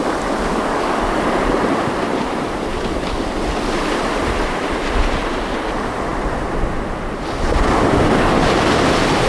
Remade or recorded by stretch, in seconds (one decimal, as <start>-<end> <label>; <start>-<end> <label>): 0.0-0.4 recorded; 0.4-1.2 remade; 1.2-2.7 recorded; 2.7-3.3 remade; 3.3-9.3 recorded